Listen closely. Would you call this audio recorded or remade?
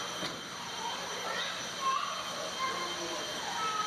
recorded